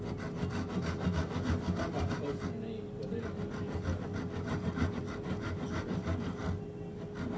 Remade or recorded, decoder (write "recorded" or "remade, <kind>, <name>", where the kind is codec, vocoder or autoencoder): recorded